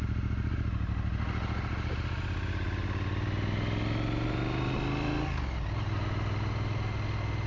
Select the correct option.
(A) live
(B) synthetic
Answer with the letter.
A